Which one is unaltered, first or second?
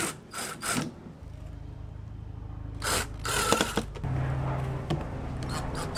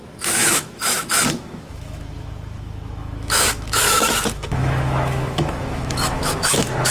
first